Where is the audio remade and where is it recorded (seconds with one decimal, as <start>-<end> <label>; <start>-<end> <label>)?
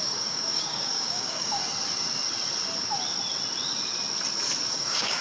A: 0.0-1.6 remade; 1.6-4.7 recorded; 4.7-5.2 remade